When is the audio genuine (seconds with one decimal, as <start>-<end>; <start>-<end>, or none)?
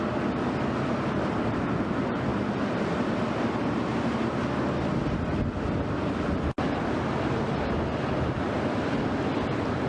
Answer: 0.0-9.9